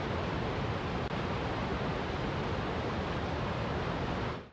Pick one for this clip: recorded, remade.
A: recorded